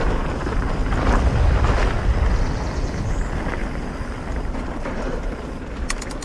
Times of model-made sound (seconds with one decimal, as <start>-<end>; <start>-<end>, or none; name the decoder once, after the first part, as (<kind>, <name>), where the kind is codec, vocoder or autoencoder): 0.0-0.8 (vocoder, BigVGAN v2); 4.5-6.2